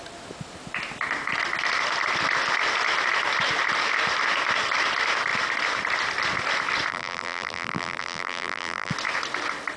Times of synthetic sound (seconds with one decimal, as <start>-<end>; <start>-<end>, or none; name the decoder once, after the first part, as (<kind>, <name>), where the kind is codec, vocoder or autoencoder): 6.9-8.9 (vocoder, BigVGAN v2)